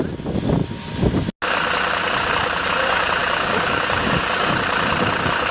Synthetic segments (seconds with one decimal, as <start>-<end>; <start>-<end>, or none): 3.2-4.5